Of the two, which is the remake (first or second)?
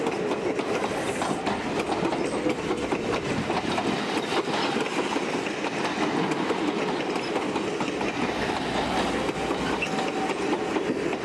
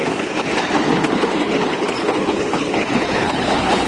second